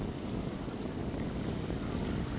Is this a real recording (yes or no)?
yes